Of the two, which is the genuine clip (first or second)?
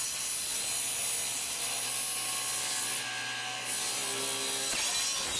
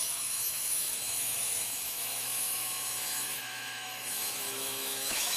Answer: first